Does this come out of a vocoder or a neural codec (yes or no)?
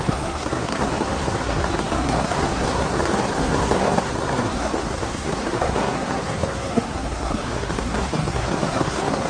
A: yes